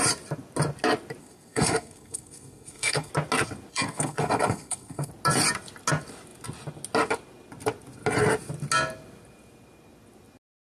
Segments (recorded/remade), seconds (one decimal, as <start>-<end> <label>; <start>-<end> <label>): 0.0-1.2 recorded; 1.2-3.1 remade; 3.1-3.7 recorded; 3.7-5.1 remade; 5.1-10.7 recorded